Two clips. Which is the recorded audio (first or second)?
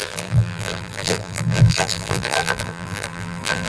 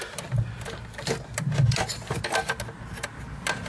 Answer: second